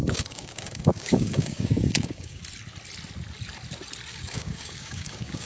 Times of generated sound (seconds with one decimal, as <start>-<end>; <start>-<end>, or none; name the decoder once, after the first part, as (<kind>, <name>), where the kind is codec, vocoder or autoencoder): 0.0-2.4 (codec, DAC); 4.1-5.5